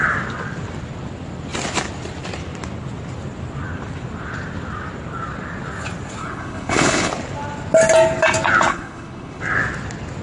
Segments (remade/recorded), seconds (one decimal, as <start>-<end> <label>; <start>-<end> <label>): 0.0-6.2 recorded; 6.2-7.1 remade; 7.1-8.7 recorded; 8.7-9.4 remade; 9.4-10.2 recorded